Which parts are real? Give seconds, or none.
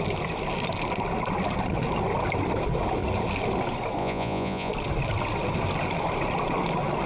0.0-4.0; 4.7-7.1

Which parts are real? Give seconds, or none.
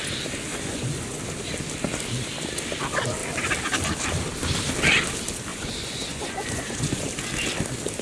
0.0-0.5; 1.2-5.5; 7.1-8.0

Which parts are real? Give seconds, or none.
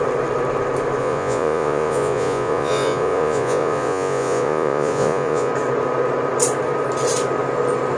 0.0-1.0; 5.5-8.0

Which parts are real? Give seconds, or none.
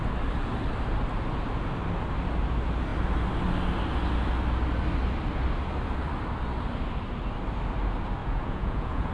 0.0-8.2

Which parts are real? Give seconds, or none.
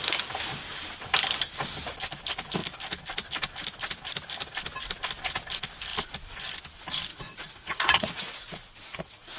0.0-7.1